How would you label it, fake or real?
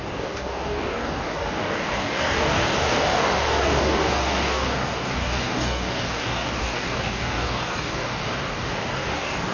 fake